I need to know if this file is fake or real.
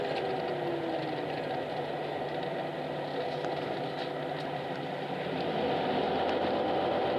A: real